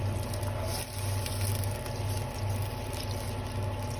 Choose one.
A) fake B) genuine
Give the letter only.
B